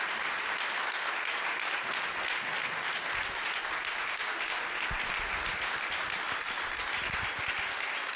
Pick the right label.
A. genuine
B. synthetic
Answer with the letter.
A